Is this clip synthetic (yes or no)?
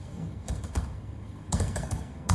yes